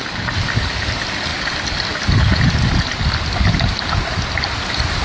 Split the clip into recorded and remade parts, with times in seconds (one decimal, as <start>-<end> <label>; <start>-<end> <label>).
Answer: 0.0-5.0 recorded